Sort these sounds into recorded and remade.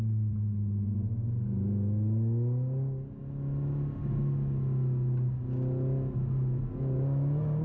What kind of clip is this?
recorded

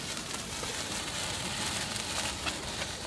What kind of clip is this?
recorded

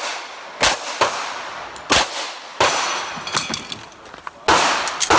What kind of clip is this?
recorded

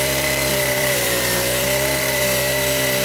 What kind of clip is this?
remade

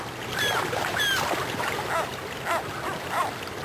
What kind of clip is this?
recorded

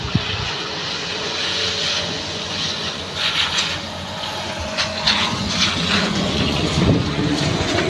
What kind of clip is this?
remade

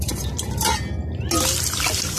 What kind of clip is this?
recorded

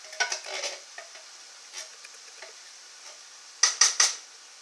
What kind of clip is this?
recorded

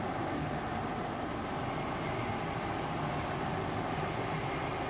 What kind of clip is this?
recorded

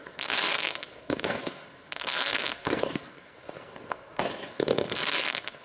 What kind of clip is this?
remade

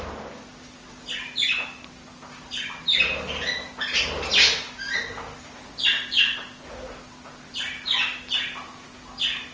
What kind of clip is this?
recorded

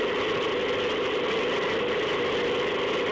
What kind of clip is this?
recorded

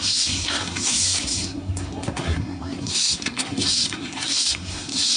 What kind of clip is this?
remade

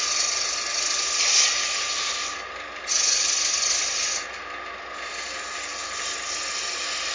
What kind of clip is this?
recorded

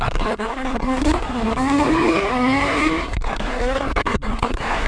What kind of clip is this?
remade